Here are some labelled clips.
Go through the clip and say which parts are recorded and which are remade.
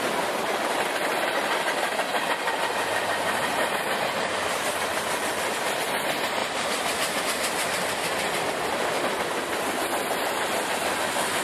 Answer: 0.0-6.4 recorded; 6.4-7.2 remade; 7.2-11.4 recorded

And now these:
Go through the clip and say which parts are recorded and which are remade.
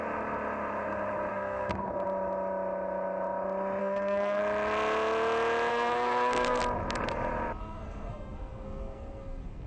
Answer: 0.0-1.3 recorded; 1.3-1.9 remade; 1.9-3.8 recorded; 3.8-4.4 remade; 4.4-5.7 recorded; 5.7-6.6 remade; 6.6-7.6 recorded; 7.6-9.7 remade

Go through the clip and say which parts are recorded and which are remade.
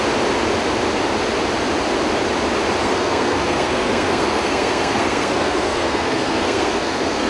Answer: 0.0-2.8 recorded; 2.8-7.3 remade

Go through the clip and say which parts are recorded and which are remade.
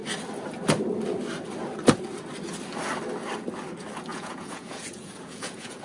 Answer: 0.0-4.1 recorded; 4.1-5.8 remade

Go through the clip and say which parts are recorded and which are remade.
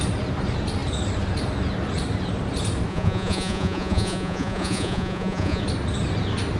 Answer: 0.0-2.9 recorded; 2.9-5.6 remade; 5.6-6.6 recorded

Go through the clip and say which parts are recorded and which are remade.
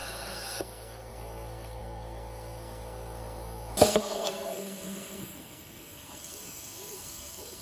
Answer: 0.0-7.6 remade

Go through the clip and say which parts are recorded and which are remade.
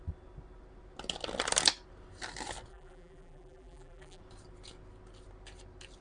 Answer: 0.0-2.7 recorded; 2.7-4.2 remade; 4.2-6.0 recorded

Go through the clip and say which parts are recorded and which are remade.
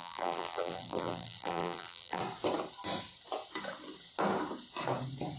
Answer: 0.0-2.2 remade; 2.2-5.4 recorded